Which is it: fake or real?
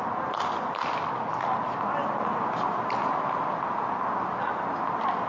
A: real